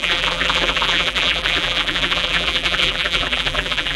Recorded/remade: remade